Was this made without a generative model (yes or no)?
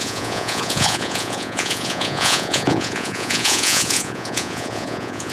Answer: no